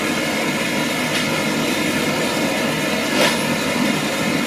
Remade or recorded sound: recorded